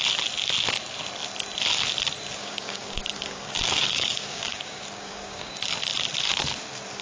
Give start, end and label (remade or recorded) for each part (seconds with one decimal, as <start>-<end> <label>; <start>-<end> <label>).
0.0-2.4 recorded; 2.4-5.5 remade; 5.5-7.0 recorded